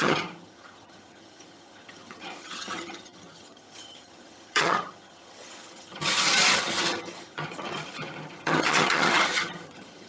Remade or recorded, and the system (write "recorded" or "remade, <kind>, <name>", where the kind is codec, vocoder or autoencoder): remade, vocoder, HiFi-GAN